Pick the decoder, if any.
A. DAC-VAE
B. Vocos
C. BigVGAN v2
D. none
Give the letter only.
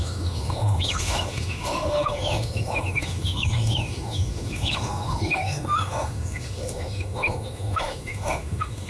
A